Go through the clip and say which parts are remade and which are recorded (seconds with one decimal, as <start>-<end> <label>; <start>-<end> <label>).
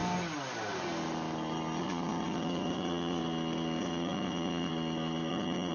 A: 0.0-1.8 recorded; 1.8-3.2 remade; 3.2-3.8 recorded; 3.8-4.7 remade; 4.7-5.3 recorded; 5.3-5.7 remade